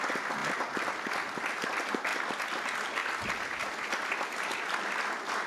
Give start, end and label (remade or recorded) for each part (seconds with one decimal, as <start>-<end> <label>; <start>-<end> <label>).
0.0-5.5 recorded